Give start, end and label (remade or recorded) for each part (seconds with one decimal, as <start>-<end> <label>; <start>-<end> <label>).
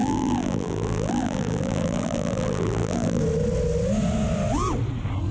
0.0-3.2 remade; 3.2-5.3 recorded